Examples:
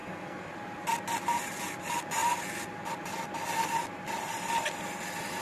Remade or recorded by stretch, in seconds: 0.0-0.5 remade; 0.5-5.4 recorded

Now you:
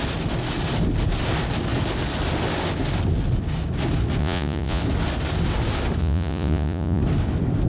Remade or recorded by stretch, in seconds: 0.0-4.2 recorded; 4.2-4.8 remade; 4.8-6.0 recorded; 6.0-7.0 remade; 7.0-7.7 recorded

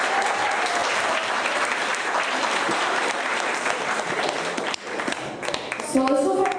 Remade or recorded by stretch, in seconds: 0.0-0.8 recorded; 0.8-4.2 remade; 4.2-6.6 recorded

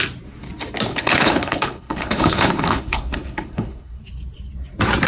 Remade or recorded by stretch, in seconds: 0.0-0.9 recorded; 0.9-4.0 remade; 4.0-5.1 recorded

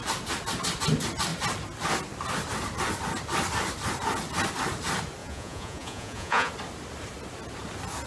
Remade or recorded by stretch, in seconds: 0.0-5.2 recorded; 5.2-6.5 remade; 6.5-8.1 recorded

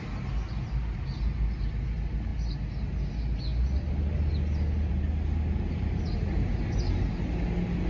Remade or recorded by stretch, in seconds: 0.0-7.9 recorded

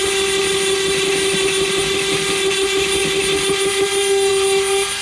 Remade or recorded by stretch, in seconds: 0.0-5.0 recorded